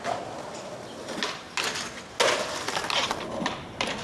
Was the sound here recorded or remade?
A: recorded